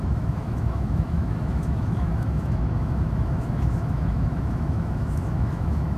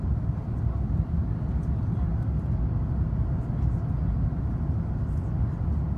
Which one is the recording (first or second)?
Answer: second